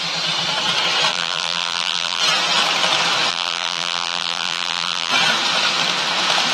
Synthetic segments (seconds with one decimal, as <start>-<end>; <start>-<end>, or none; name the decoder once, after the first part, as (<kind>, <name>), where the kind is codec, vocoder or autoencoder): 1.1-2.2 (vocoder, BigVGAN v2); 3.3-5.1